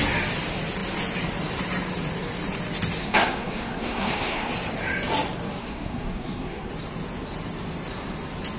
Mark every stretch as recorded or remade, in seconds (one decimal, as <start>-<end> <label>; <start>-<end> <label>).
0.0-3.0 recorded; 3.0-4.5 remade; 4.5-5.6 recorded; 5.6-6.7 remade; 6.7-8.6 recorded